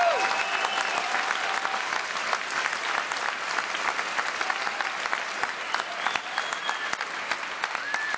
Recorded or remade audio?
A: recorded